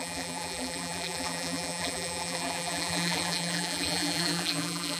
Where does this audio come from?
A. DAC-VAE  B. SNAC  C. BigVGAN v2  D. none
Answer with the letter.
C